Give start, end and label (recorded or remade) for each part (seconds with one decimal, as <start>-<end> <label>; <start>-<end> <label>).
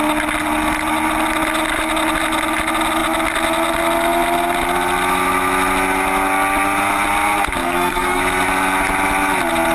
0.0-7.6 recorded; 7.6-8.2 remade; 8.2-9.7 recorded